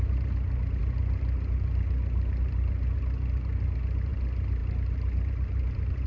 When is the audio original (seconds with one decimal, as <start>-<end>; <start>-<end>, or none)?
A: 0.0-6.1